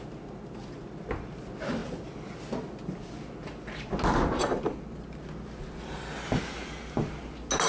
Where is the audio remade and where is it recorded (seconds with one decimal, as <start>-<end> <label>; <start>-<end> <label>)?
0.0-7.7 recorded